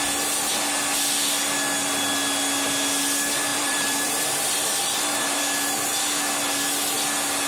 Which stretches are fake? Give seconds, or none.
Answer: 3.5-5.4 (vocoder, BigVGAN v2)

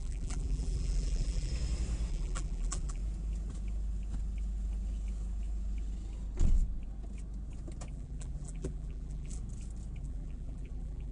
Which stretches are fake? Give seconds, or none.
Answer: 0.0-1.5 (vocoder, BigVGAN v2); 2.1-3.0; 7.9-9.4; 10.0-11.1